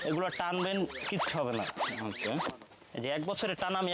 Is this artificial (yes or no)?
no